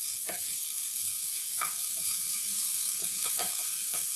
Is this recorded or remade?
remade